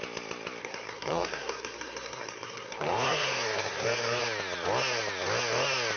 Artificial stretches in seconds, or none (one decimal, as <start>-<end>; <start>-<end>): 0.6-4.2